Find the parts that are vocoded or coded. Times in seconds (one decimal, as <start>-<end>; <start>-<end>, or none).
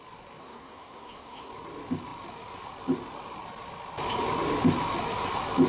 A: 0.4-1.5